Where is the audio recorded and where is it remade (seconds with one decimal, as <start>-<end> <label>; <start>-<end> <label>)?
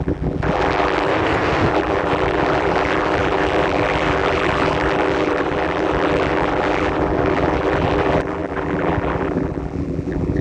0.0-1.1 remade; 1.1-1.7 recorded; 1.7-10.4 remade